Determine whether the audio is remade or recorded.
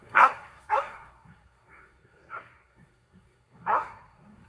remade